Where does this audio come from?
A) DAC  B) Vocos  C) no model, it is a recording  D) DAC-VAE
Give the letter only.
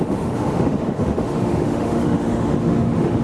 D